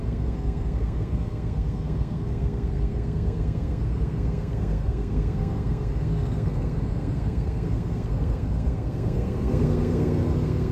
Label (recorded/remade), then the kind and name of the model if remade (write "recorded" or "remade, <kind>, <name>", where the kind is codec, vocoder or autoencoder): remade, codec, SNAC